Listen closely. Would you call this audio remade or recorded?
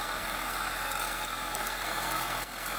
remade